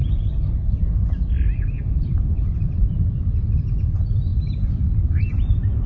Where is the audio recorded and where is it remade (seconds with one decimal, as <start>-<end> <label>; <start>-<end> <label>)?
0.0-5.9 recorded

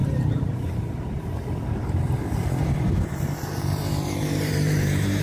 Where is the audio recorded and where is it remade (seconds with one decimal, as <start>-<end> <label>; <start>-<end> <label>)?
0.0-5.2 remade

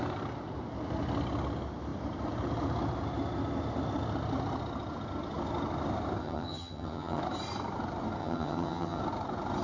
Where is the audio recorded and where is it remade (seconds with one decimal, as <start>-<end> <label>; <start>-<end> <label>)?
0.0-6.2 recorded; 6.2-7.2 remade; 7.2-8.2 recorded; 8.2-9.0 remade; 9.0-9.6 recorded

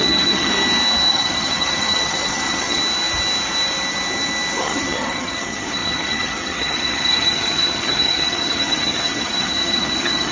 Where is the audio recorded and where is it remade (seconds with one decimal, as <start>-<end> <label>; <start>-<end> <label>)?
0.0-0.5 remade; 0.5-1.1 recorded; 1.1-2.8 remade; 2.8-4.6 recorded; 4.6-10.3 remade